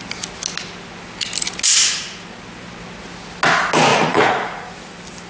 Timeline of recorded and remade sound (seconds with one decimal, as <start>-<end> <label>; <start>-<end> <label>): 0.0-3.9 recorded; 3.9-4.7 remade; 4.7-5.3 recorded